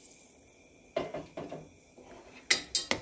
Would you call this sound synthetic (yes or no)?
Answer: no